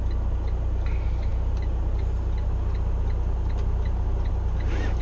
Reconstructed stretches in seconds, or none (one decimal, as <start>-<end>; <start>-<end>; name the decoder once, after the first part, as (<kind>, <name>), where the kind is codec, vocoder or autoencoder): none